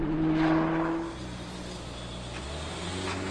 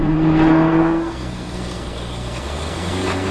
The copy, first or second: second